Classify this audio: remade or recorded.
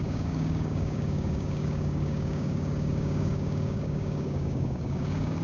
remade